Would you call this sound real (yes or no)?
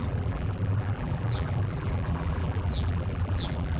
no